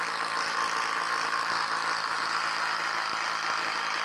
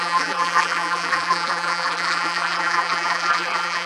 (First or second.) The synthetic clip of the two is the second